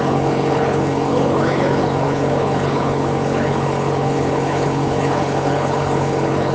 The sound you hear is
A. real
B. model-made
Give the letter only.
B